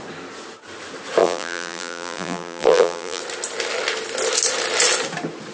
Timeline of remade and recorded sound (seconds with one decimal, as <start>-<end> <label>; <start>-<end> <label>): 0.0-1.2 recorded; 1.2-3.2 remade; 3.2-5.5 recorded